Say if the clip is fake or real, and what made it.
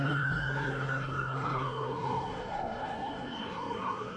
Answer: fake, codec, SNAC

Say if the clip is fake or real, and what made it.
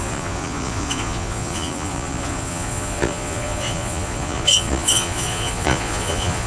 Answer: fake, vocoder, Vocos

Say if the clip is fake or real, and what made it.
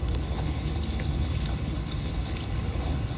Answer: fake, codec, HILCodec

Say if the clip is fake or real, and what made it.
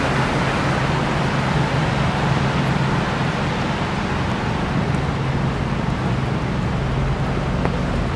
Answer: real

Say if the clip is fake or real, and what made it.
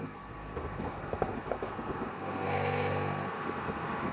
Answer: fake, codec, SNAC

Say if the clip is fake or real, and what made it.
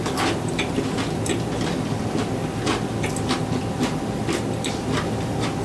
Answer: real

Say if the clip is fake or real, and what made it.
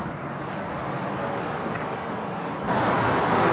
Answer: fake, codec, DAC